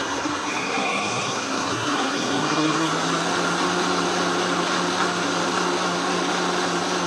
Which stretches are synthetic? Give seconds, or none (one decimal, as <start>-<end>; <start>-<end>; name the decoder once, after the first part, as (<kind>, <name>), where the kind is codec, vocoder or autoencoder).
0.0-2.9 (codec, SNAC)